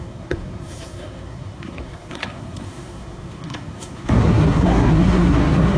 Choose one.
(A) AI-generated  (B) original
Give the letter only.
A